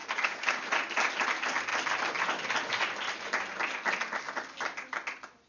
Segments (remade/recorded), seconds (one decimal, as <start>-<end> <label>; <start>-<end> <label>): 0.0-5.5 recorded